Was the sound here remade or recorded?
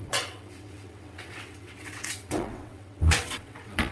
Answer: remade